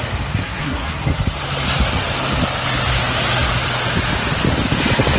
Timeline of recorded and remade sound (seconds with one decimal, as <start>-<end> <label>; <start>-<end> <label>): 0.0-0.4 recorded; 0.4-1.0 remade; 1.0-5.2 recorded